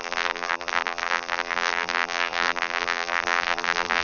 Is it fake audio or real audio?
fake